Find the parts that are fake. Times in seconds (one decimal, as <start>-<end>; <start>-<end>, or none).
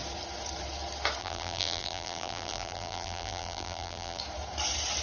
1.2-4.2